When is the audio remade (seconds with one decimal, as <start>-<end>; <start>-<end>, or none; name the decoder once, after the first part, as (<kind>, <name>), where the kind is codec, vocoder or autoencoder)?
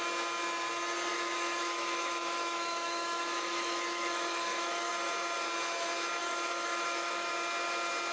1.1-4.9 (autoencoder, DAC-VAE); 6.2-7.3